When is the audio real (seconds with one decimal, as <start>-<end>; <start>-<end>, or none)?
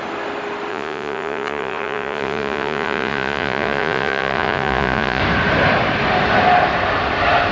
0.0-0.7; 5.2-7.5